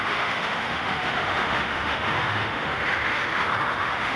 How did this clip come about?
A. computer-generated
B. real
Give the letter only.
A